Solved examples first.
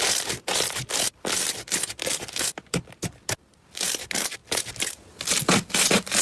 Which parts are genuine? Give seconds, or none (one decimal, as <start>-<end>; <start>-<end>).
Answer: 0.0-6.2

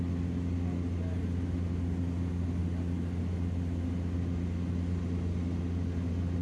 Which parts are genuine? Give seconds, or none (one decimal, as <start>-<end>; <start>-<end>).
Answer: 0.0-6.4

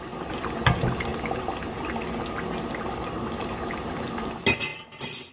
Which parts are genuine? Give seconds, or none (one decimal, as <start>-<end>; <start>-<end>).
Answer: 0.0-5.3